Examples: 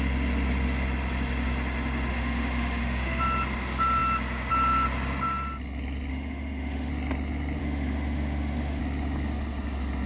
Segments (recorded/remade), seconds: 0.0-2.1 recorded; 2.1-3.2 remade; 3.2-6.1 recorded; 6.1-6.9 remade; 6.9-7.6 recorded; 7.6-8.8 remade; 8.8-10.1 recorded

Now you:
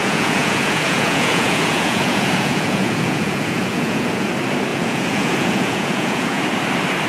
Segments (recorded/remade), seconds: 0.0-4.3 remade; 4.3-4.7 recorded; 4.7-6.4 remade; 6.4-7.1 recorded

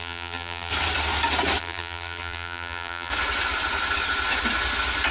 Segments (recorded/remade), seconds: 0.0-0.7 remade; 0.7-1.6 recorded; 1.6-3.1 remade; 3.1-5.1 recorded

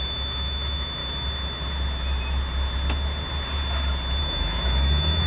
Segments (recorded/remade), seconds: 0.0-1.0 remade; 1.0-4.2 recorded; 4.2-5.3 remade

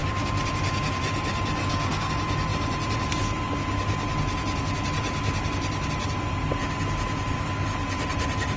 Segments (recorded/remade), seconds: 0.0-1.6 recorded; 1.6-2.1 remade; 2.1-8.6 recorded